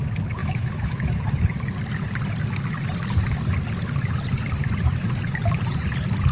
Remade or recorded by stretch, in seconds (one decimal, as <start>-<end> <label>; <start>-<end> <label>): 0.0-0.4 recorded; 0.4-1.3 remade; 1.3-6.3 recorded